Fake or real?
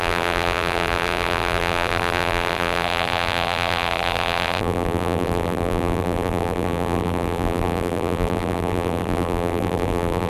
fake